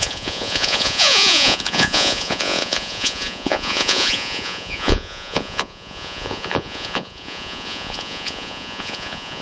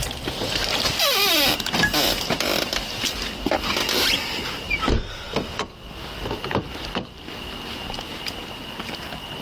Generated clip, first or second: first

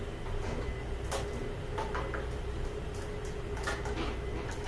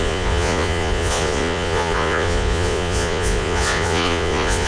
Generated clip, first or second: second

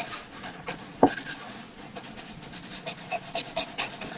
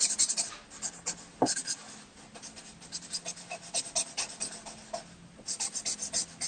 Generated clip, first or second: first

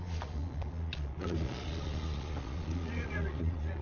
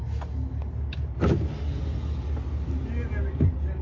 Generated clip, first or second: first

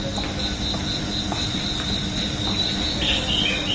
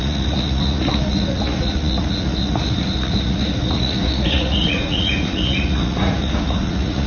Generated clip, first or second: second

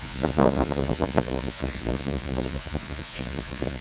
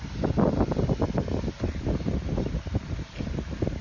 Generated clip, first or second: first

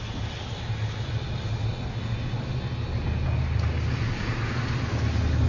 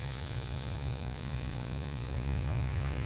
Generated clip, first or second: second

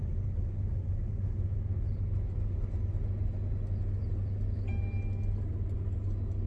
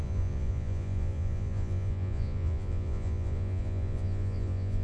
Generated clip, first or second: second